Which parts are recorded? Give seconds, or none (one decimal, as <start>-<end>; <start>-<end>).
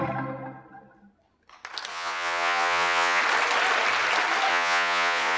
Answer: 0.0-1.9; 3.2-4.5